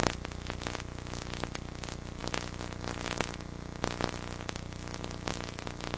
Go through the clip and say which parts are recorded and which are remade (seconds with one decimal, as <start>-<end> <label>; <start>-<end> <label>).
0.0-6.0 recorded